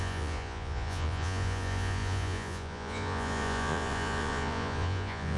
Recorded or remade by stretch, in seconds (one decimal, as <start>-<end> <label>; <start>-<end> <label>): 0.0-5.4 remade